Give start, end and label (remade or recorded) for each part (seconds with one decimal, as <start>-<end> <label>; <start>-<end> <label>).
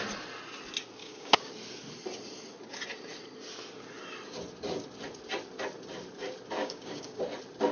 0.0-1.0 recorded; 1.0-1.5 remade; 1.5-6.6 recorded; 6.6-7.2 remade; 7.2-7.7 recorded